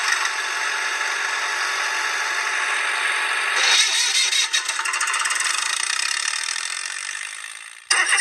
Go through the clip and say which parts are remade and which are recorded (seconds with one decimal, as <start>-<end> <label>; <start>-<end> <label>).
0.0-8.2 recorded